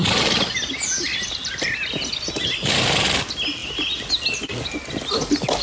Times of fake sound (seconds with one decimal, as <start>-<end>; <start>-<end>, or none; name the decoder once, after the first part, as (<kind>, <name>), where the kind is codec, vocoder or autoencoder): none